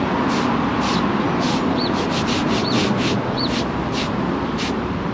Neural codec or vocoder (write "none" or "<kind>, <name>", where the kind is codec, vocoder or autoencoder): none